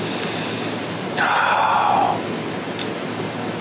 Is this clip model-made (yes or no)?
no